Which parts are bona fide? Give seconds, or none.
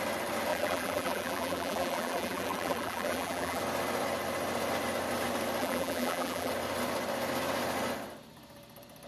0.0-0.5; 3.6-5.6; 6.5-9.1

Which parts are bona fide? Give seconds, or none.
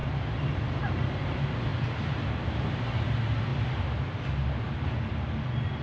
0.6-1.7; 2.4-5.8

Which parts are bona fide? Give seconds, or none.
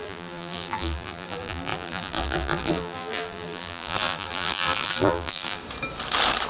5.6-6.5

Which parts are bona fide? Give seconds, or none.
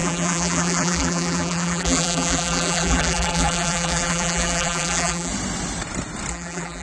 5.3-6.3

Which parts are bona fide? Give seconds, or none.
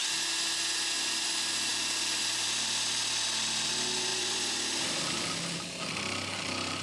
0.0-4.1; 4.9-6.8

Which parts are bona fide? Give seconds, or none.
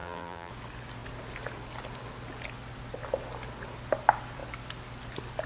0.5-5.5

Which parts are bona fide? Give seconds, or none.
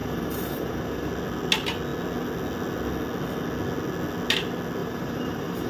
1.1-4.8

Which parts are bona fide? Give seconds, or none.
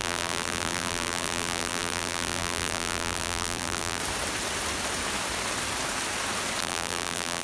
4.0-6.6